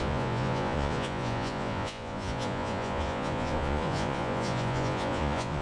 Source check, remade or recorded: remade